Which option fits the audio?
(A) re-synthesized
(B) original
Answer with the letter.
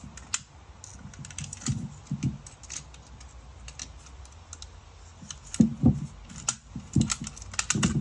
B